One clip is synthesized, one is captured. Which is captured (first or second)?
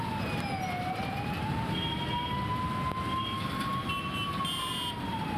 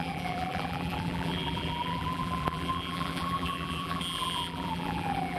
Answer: first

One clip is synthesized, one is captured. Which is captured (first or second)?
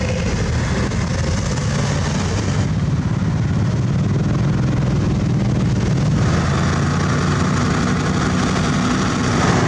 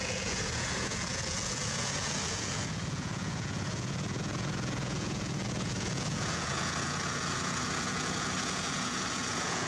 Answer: first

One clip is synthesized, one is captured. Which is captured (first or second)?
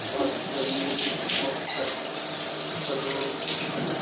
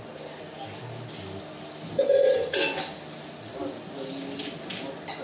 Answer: second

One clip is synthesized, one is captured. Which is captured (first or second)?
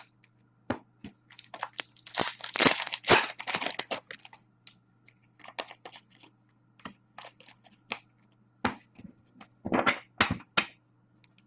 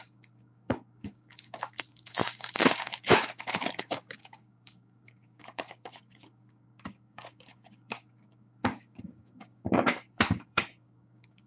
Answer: first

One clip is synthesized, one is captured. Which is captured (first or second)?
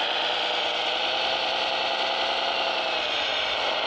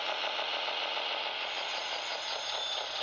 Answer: second